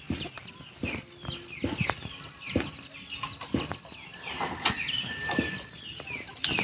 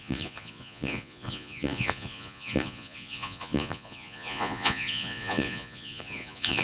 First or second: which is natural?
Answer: first